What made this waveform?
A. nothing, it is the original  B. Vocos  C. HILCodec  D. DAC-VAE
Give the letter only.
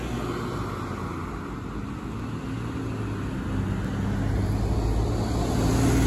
A